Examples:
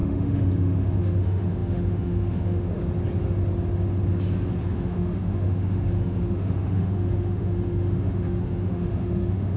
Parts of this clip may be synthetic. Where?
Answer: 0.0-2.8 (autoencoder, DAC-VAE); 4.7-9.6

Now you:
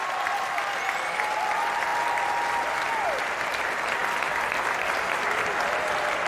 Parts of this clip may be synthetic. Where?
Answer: none

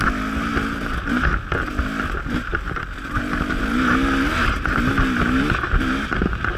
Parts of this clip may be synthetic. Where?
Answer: none